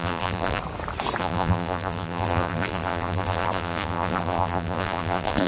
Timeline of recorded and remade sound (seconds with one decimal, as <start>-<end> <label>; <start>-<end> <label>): 0.0-0.6 remade; 0.6-1.2 recorded; 1.2-5.5 remade